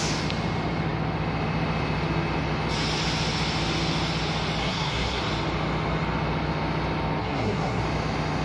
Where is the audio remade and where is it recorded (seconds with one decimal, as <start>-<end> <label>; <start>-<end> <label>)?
0.0-4.6 recorded; 4.6-5.2 remade; 5.2-7.2 recorded; 7.2-7.8 remade; 7.8-8.4 recorded